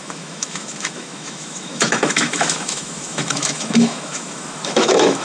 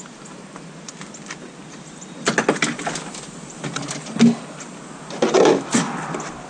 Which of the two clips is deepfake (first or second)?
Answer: first